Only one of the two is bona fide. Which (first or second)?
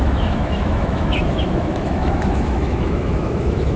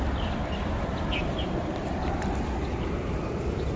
second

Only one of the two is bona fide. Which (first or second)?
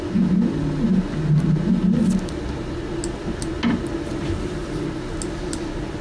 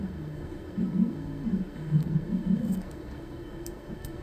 first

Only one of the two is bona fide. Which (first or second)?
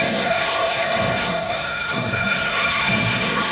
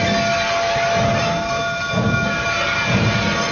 second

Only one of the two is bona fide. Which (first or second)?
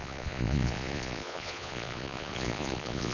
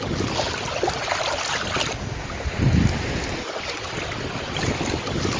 second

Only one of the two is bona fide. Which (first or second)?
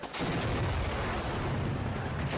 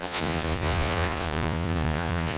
first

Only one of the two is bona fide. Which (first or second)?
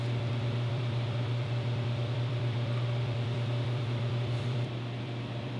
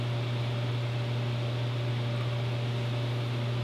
second